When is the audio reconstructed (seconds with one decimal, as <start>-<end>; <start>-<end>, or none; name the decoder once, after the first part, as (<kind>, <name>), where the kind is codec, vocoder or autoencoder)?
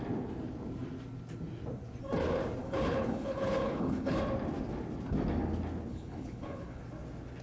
2.6-4.2 (codec, HILCodec); 5.9-6.8